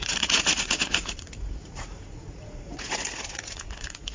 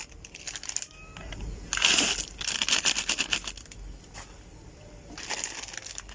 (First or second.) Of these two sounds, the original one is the second